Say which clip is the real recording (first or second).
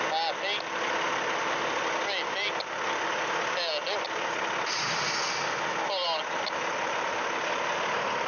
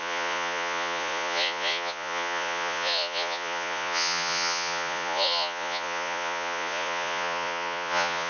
first